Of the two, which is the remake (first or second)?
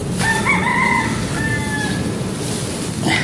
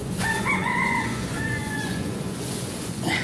second